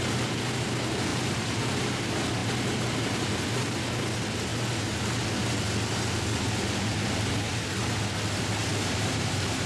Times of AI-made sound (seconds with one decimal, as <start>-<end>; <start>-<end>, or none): 1.1-1.8; 8.6-9.7